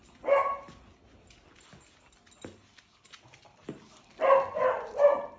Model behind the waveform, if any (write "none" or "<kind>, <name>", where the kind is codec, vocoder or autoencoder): none